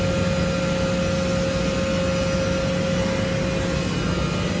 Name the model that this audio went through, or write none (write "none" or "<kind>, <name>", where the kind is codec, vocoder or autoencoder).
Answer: none